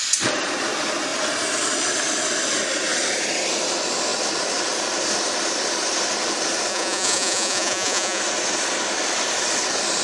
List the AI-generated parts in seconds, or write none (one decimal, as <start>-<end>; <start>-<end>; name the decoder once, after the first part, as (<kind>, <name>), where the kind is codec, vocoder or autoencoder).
6.7-8.2 (vocoder, Vocos)